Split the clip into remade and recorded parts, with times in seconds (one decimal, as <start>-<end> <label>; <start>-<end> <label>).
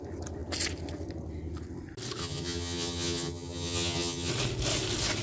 0.0-2.2 recorded; 2.2-4.3 remade; 4.3-5.2 recorded